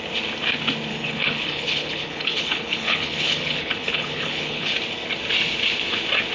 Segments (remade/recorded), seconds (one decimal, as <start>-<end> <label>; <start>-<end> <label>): 0.0-0.9 recorded; 0.9-4.7 remade; 4.7-6.3 recorded